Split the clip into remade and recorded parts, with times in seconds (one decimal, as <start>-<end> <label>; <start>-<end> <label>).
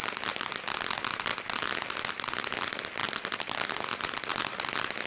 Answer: 0.0-5.1 recorded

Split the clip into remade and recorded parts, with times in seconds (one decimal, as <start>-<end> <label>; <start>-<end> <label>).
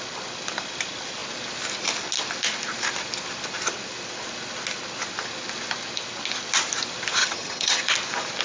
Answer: 0.0-7.2 recorded; 7.2-7.8 remade; 7.8-8.4 recorded